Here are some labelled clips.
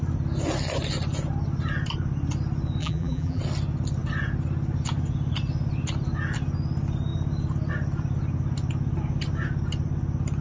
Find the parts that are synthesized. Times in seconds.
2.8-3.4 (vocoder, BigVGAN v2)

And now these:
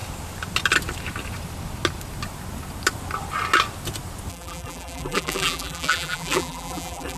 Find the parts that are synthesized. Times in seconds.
4.3-7.2 (vocoder, BigVGAN v2)

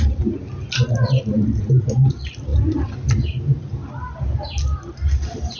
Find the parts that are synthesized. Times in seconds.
none

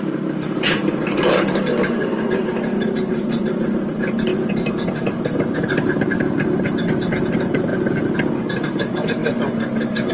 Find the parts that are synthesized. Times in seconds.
0.0-4.3 (vocoder, BigVGAN v2); 7.2-7.7; 8.4-9.2

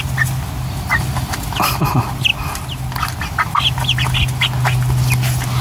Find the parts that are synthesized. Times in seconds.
none

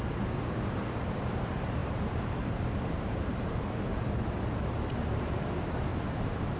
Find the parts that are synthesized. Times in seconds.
0.0-3.9 (vocoder, BigVGAN v2); 5.1-5.9